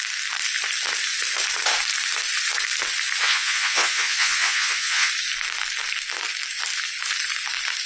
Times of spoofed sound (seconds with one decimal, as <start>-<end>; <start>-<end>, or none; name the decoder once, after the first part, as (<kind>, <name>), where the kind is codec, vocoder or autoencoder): 3.2-5.1 (vocoder, Vocos)